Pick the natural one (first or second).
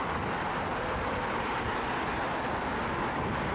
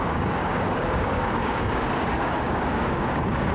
first